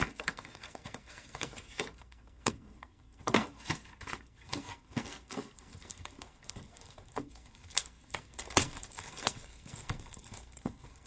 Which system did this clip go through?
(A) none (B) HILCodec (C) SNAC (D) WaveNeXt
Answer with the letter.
C